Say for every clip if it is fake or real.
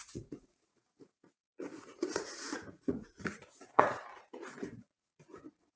fake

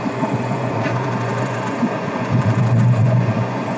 fake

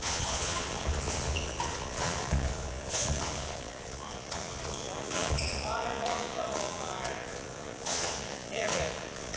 fake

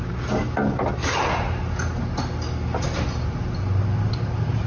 real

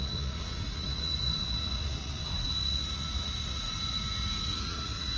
fake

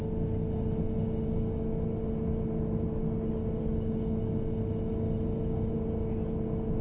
real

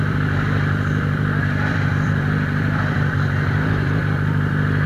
real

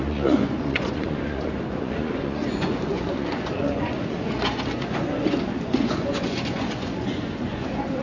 fake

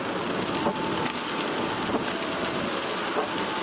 real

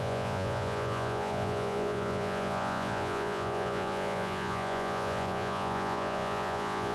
fake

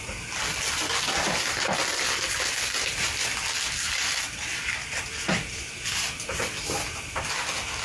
real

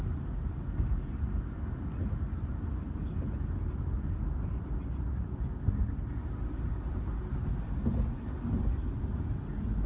real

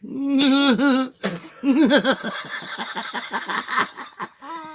real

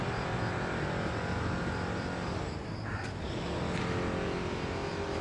real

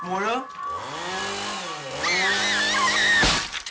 real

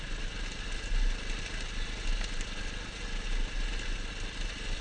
real